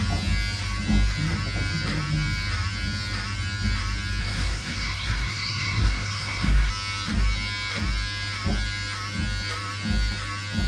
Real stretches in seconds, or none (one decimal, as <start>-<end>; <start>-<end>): 0.0-4.2; 6.7-10.7